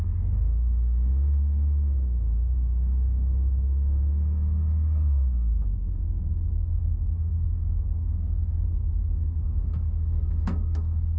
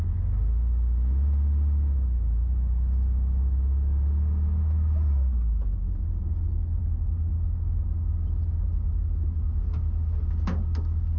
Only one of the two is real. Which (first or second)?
second